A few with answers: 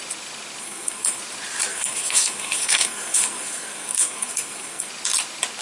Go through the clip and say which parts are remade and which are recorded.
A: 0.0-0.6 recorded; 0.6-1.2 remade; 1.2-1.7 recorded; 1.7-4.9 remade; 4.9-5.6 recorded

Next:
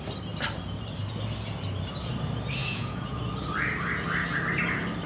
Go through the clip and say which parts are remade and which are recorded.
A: 0.0-2.6 recorded; 2.6-3.2 remade; 3.2-5.1 recorded

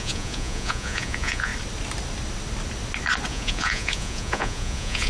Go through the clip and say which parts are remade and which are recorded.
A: 0.0-1.5 remade; 1.5-3.3 recorded; 3.3-5.1 remade

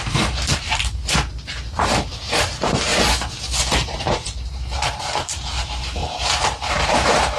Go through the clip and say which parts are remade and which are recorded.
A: 0.0-2.9 remade; 2.9-3.6 recorded; 3.6-7.4 remade

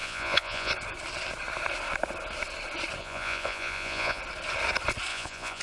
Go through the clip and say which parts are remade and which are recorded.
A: 0.0-0.7 remade; 0.7-3.0 recorded; 3.0-4.2 remade; 4.2-5.1 recorded; 5.1-5.6 remade

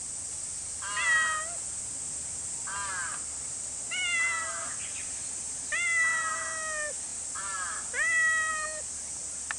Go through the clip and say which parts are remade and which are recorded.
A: 0.0-9.6 recorded

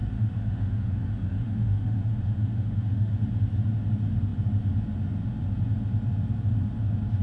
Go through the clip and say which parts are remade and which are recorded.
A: 0.0-3.1 remade; 3.1-7.2 recorded

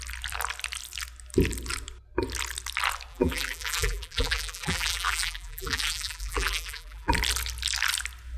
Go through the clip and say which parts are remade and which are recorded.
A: 0.0-3.1 recorded; 3.1-7.1 remade; 7.1-8.4 recorded